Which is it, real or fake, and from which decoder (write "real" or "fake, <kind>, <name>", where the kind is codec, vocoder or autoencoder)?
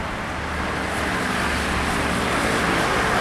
real